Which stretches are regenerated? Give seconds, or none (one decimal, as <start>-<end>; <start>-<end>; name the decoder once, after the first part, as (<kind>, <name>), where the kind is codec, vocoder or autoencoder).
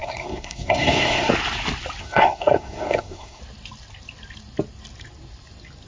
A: 0.0-1.3 (codec, SNAC); 2.0-3.4